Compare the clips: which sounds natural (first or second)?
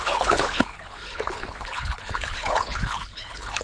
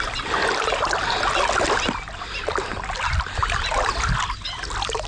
second